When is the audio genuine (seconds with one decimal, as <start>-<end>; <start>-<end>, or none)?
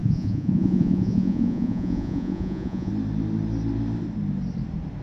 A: 2.9-5.0